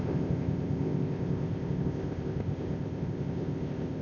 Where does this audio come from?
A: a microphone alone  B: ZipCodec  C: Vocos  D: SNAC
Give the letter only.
B